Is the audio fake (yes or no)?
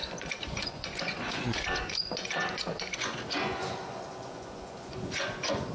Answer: yes